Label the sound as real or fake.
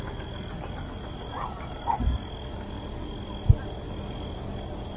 real